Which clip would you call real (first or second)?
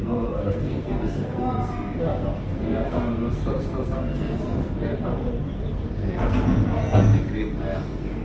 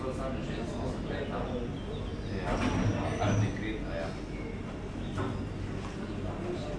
second